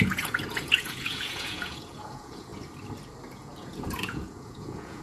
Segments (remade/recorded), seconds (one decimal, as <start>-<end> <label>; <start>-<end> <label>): 0.0-2.5 remade; 2.5-3.3 recorded; 3.3-5.0 remade